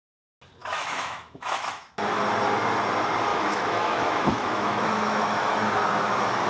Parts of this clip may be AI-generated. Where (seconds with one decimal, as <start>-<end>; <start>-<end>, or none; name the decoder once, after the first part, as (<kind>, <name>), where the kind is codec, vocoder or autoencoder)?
0.6-1.9 (autoencoder, DAC-VAE); 3.3-5.5